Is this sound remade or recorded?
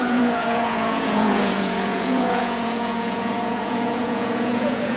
remade